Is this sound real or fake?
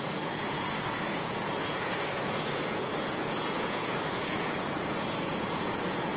fake